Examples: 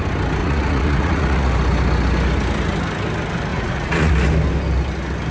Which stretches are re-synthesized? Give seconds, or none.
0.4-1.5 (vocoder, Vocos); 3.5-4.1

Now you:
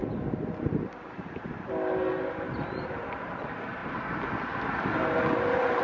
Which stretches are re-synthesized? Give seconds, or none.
none

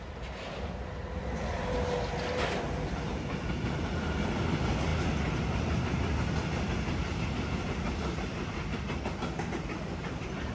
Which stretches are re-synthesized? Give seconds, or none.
none

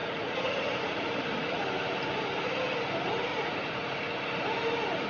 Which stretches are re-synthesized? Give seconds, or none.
0.0-1.6 (vocoder, Vocos); 3.3-4.1

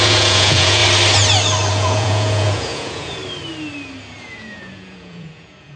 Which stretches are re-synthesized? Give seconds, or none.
0.0-0.8 (vocoder, Vocos); 1.7-3.2; 4.2-5.8

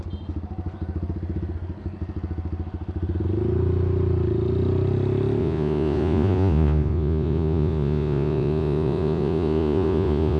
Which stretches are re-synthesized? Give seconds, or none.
5.4-10.4 (vocoder, Vocos)

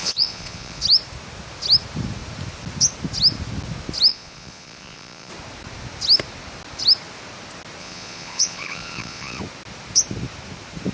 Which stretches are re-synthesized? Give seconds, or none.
0.0-0.8 (vocoder, Vocos); 4.1-5.3; 7.8-9.4

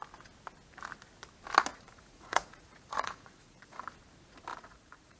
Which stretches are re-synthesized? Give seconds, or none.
1.7-3.8 (vocoder, Vocos); 4.5-5.2